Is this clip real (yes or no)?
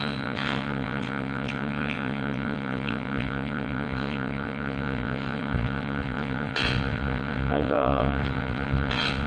no